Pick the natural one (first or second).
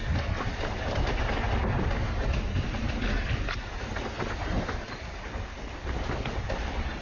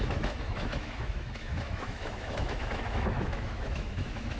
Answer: first